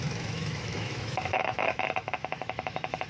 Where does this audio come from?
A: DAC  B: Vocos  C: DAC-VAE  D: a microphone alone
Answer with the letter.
C